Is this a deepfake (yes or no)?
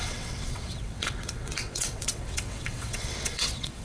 yes